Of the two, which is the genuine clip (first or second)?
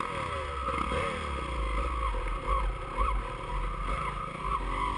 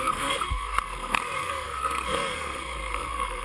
first